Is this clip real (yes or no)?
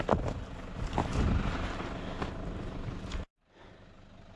yes